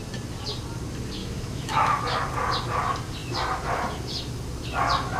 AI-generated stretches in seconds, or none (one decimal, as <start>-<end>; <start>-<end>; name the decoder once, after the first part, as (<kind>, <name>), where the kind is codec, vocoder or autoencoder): 1.2-2.0 (autoencoder, DAC-VAE)